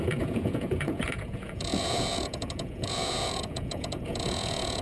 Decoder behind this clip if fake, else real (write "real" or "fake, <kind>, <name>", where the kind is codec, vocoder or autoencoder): fake, vocoder, Vocos